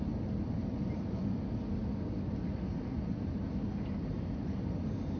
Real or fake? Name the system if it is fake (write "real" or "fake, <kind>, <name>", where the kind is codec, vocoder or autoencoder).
real